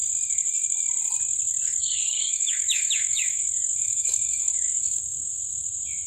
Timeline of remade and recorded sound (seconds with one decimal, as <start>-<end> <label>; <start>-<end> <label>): 0.0-1.8 recorded; 1.8-5.4 remade; 5.4-6.1 recorded